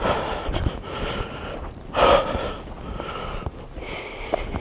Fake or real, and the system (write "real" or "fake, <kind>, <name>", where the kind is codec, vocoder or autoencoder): real